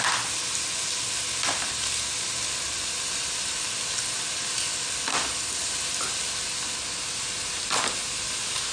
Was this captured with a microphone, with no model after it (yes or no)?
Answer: yes